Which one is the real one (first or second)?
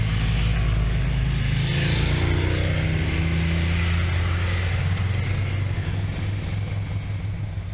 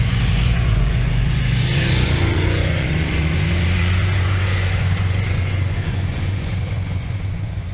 first